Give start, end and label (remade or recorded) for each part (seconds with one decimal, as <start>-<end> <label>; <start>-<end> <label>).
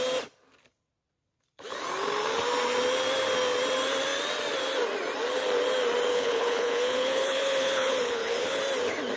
0.0-6.1 recorded; 6.1-8.6 remade; 8.6-9.2 recorded